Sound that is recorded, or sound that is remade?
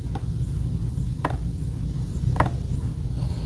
recorded